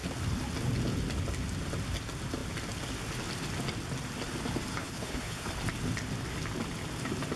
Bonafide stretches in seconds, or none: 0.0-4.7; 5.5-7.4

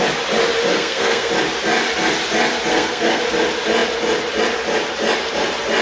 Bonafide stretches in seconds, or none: 0.0-0.7; 1.3-2.7; 3.2-5.8

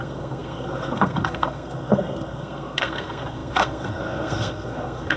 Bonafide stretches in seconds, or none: none

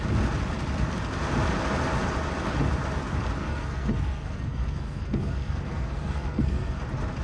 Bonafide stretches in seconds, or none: 0.0-3.4; 6.8-7.2